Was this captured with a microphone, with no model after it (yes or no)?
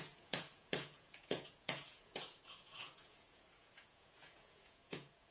no